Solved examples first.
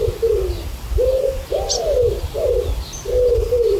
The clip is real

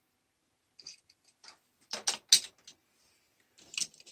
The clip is real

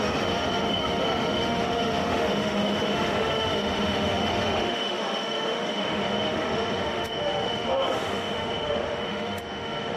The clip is fake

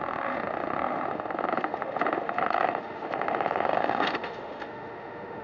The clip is fake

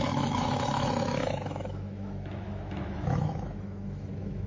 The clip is fake